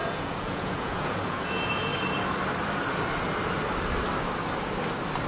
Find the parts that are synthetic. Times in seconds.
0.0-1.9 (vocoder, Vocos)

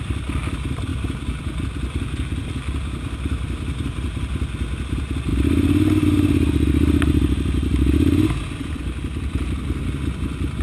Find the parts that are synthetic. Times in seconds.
none

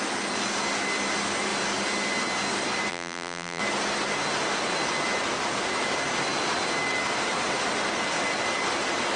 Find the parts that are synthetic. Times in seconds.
2.9-3.6 (vocoder, BigVGAN v2)

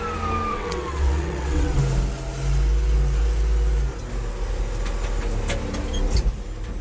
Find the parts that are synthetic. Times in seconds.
0.5-1.8 (vocoder, WaveNeXt)